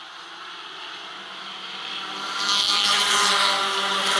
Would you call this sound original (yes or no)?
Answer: no